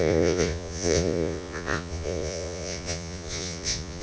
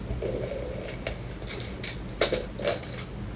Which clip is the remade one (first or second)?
first